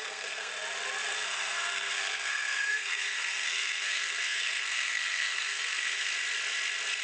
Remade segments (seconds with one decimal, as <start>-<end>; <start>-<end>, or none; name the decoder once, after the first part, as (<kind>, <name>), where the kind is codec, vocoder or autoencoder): 0.0-0.5 (codec, SNAC); 1.1-6.1